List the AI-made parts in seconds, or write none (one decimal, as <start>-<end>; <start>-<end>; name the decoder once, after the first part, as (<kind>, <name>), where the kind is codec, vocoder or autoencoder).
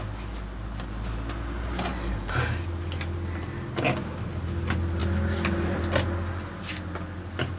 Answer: none